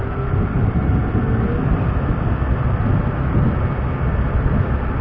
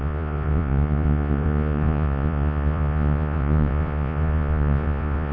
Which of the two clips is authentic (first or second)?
first